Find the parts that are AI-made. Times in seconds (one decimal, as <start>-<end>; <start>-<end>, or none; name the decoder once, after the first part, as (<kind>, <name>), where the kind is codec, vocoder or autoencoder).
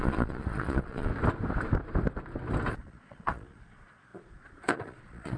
0.0-1.1 (vocoder, Vocos); 2.7-5.4